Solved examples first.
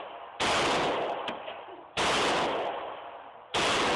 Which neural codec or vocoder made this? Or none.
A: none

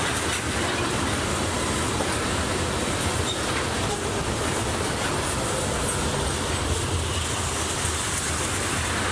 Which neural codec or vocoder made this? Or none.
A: none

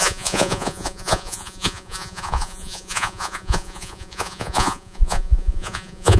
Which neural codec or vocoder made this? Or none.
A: vocoder, Vocos